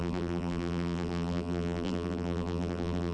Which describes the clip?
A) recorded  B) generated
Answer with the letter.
B